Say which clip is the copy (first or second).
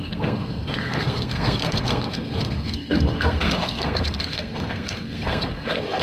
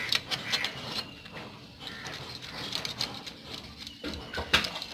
first